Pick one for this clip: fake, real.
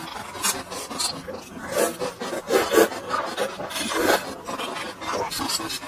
real